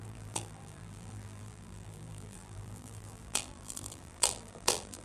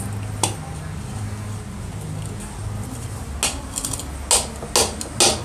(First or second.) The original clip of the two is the second